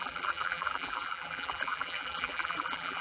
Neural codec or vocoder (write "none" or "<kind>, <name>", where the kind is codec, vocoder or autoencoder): vocoder, BigVGAN v2